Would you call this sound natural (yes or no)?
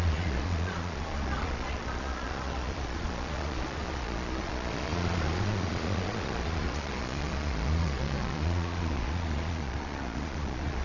no